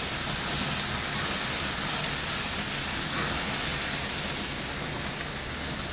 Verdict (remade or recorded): recorded